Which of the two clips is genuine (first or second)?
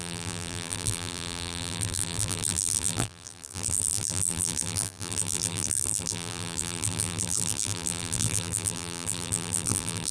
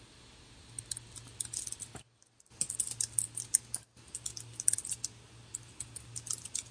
second